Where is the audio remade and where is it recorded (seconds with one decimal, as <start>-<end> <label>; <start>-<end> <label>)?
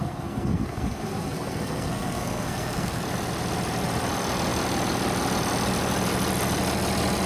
0.0-3.0 remade; 3.0-7.3 recorded